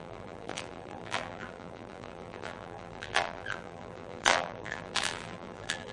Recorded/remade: remade